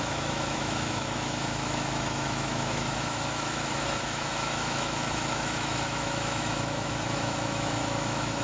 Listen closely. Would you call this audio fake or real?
fake